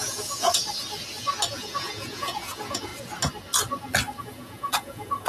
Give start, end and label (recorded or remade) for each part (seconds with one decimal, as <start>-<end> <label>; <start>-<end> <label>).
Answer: 0.0-0.6 remade; 0.6-1.5 recorded; 1.5-2.9 remade; 2.9-4.2 recorded; 4.2-5.3 remade